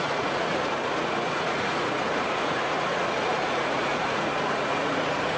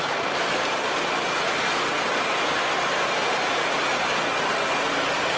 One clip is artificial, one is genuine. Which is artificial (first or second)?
first